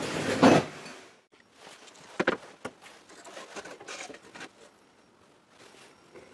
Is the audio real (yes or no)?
yes